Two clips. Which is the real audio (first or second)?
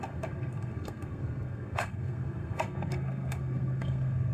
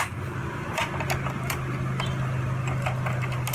second